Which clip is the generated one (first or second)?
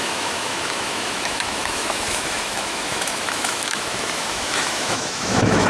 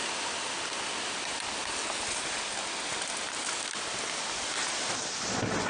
first